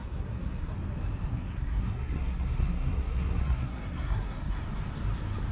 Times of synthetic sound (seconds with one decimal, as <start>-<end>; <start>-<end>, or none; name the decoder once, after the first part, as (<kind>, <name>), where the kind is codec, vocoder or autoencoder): 0.0-0.7 (codec, SNAC); 1.3-4.6